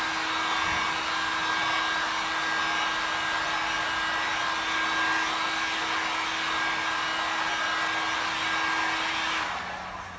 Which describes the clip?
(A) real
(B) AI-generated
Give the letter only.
A